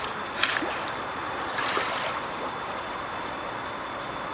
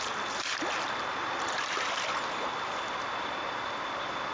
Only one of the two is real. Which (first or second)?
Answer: second